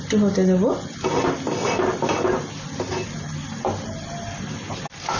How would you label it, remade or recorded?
recorded